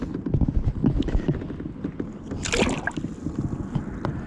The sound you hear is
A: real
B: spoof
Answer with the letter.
A